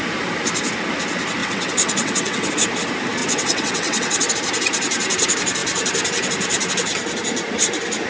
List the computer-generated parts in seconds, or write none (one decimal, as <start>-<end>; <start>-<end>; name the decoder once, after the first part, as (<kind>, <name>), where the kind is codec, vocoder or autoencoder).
1.4-2.5 (vocoder, WaveNeXt); 3.2-4.3